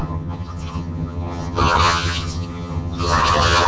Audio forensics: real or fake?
fake